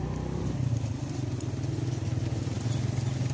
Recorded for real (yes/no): yes